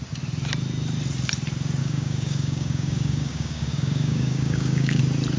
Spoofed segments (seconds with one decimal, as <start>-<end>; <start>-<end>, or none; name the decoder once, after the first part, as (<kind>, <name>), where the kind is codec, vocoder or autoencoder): 1.8-5.0 (codec, DAC)

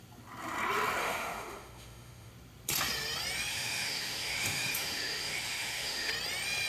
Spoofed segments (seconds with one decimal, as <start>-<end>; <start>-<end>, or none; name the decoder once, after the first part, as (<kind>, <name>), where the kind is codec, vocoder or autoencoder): 1.0-2.3 (autoencoder, DAC-VAE); 3.5-6.1

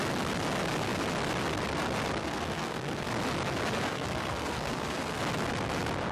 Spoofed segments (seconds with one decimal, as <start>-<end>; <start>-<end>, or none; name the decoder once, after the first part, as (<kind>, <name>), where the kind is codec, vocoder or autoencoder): 2.2-3.1 (codec, SNAC); 3.9-5.2

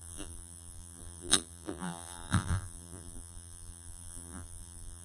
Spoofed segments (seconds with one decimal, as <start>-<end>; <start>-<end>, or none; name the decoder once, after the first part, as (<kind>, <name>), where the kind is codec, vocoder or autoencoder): 0.0-5.0 (vocoder, BigVGAN v2)

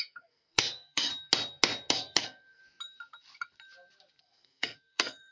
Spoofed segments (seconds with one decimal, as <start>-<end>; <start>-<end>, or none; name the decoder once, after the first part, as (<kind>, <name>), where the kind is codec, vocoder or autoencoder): 0.0-1.1 (codec, SNAC); 1.9-2.6; 4.2-5.3

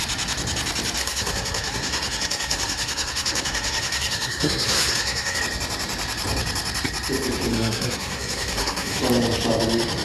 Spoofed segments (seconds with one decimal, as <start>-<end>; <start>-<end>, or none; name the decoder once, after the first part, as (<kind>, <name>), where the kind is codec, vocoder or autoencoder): 1.0-5.4 (codec, SNAC); 7.5-9.0